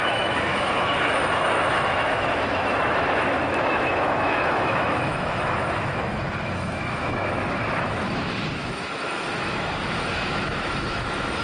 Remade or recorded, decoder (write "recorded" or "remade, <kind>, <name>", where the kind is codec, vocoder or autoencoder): remade, autoencoder, DAC-VAE